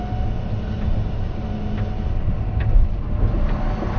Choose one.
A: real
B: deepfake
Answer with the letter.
A